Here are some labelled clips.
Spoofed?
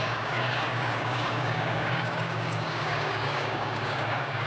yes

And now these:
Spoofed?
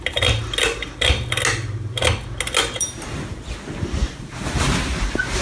no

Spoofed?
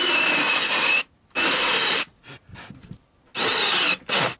no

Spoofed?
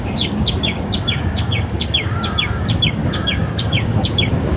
yes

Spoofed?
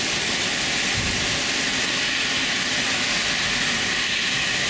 no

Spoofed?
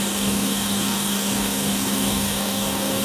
yes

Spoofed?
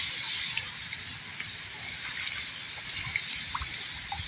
no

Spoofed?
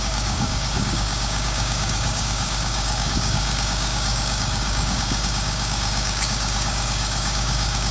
yes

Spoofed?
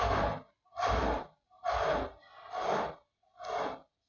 no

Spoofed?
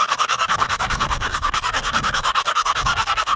yes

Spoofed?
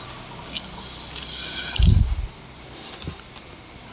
no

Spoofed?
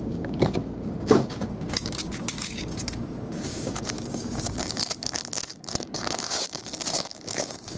yes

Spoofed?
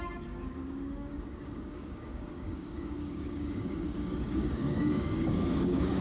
yes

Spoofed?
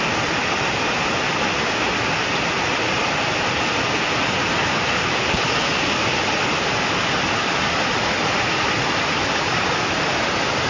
no